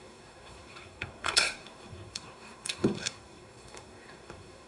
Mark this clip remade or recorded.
remade